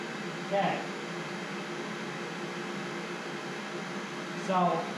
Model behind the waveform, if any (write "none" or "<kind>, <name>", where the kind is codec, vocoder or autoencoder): none